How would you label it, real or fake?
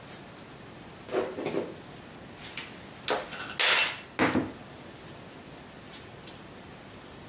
real